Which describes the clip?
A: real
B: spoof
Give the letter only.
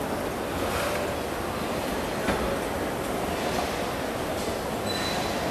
A